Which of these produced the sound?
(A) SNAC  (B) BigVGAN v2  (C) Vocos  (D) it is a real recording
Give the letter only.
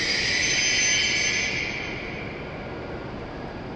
D